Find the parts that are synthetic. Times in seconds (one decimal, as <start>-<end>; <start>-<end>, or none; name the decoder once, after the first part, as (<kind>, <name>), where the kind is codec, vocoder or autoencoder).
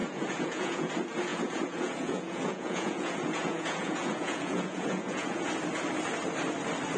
0.0-0.9 (vocoder, Vocos); 1.3-5.5